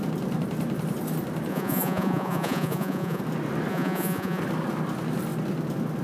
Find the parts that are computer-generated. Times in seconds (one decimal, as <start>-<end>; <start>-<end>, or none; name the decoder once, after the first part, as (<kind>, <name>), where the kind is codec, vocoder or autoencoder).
1.5-3.2 (vocoder, Vocos); 3.7-4.4